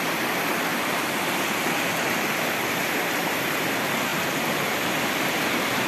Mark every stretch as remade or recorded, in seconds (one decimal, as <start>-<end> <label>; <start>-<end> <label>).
0.0-0.7 recorded; 0.7-1.2 remade; 1.2-5.9 recorded